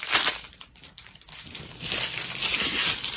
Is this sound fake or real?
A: real